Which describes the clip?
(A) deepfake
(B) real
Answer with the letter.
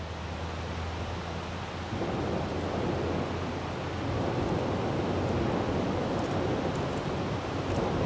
B